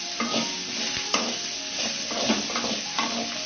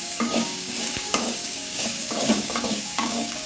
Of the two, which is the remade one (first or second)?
second